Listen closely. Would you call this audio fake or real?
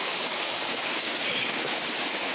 fake